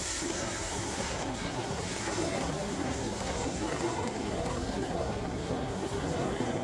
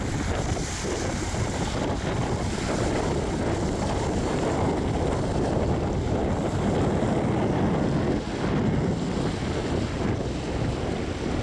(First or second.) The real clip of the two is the second